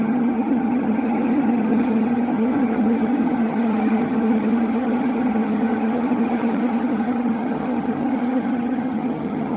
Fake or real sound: fake